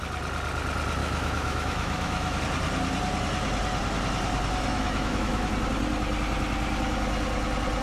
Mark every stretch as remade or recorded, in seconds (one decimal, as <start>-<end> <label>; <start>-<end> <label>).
0.0-1.0 recorded; 1.0-2.4 remade; 2.4-4.7 recorded; 4.7-5.5 remade; 5.5-7.8 recorded